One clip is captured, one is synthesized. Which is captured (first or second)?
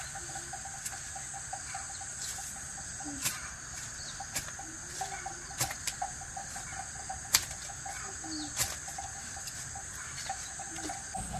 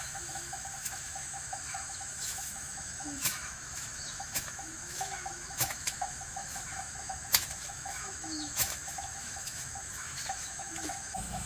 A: first